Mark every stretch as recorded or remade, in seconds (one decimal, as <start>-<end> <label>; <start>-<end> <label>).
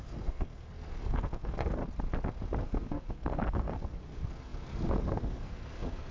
0.0-1.8 remade; 1.8-2.6 recorded; 2.6-6.1 remade